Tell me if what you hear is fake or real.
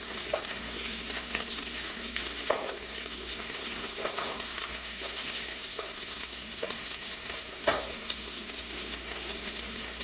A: fake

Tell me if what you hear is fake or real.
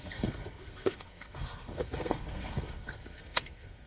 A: fake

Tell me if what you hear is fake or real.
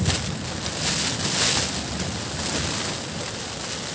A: real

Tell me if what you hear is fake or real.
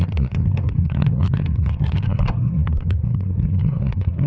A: fake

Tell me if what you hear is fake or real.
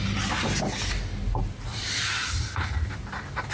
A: real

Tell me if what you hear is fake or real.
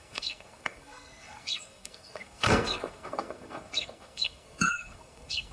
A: fake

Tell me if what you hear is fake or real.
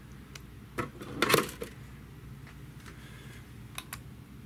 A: real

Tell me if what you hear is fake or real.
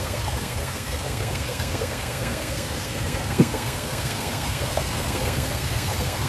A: fake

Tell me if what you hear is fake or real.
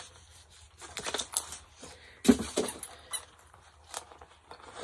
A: real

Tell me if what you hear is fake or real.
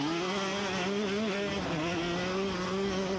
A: real